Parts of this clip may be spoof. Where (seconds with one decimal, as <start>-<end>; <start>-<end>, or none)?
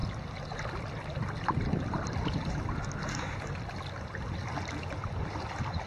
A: none